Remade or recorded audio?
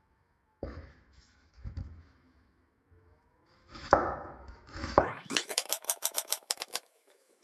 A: remade